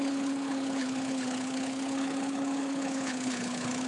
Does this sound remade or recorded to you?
remade